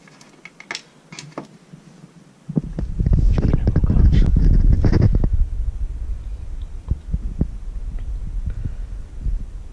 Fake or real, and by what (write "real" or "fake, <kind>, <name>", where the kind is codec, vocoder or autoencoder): real